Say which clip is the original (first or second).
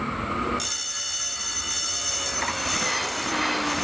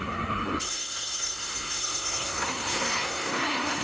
first